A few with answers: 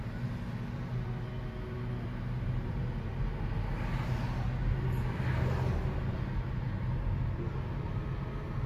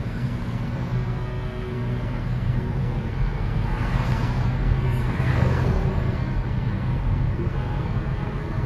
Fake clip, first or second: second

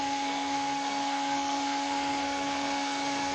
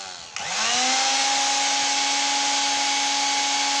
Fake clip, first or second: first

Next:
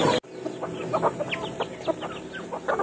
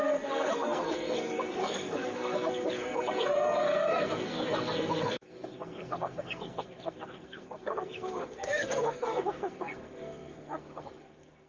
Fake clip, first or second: second